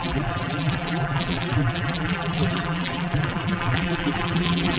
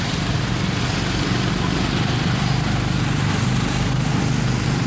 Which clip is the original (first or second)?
second